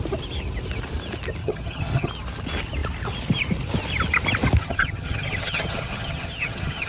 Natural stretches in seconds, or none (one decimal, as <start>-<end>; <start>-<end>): 0.0-1.4; 2.1-4.6